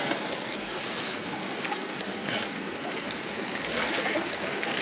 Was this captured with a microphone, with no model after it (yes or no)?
no